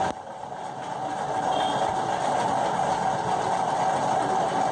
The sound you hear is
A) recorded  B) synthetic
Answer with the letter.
A